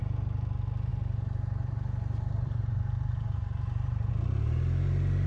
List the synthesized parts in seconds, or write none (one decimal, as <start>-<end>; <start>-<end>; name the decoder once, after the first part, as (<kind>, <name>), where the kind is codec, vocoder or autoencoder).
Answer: 0.9-4.1 (vocoder, BigVGAN v2)